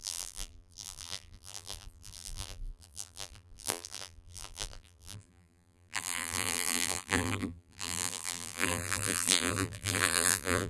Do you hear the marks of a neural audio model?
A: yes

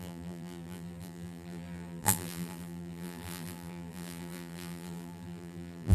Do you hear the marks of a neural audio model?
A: yes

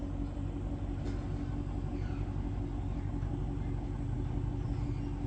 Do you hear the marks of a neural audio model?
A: no